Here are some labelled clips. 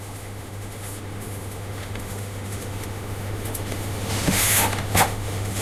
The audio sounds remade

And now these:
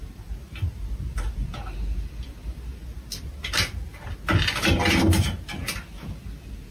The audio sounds recorded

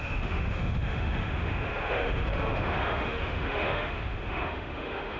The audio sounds remade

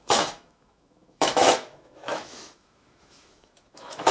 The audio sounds remade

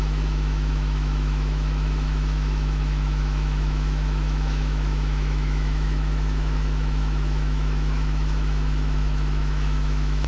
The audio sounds remade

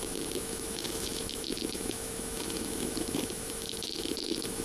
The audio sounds remade